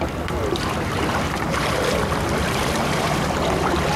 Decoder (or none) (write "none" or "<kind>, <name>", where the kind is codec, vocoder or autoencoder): vocoder, BigVGAN v2